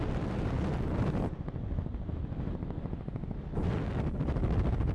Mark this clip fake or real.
real